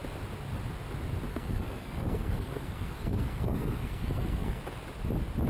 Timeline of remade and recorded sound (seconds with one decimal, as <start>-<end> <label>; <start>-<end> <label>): 0.0-1.3 recorded; 1.3-4.6 remade; 4.6-5.5 recorded